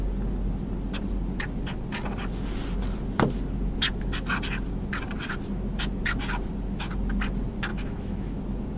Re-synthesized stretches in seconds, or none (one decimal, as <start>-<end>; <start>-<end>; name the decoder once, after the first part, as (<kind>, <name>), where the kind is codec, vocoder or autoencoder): 7.7-8.4 (autoencoder, DAC-VAE)